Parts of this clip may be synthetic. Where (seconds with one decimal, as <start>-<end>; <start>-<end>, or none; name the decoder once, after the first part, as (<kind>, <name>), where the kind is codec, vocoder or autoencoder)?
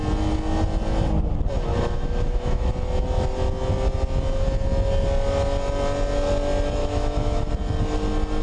1.7-2.7 (autoencoder, DAC-VAE); 6.8-7.5